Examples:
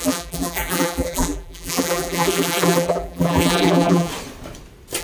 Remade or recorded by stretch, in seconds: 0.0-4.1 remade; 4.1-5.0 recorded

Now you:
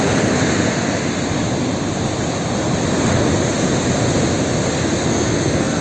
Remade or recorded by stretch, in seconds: 0.0-5.1 recorded; 5.1-5.8 remade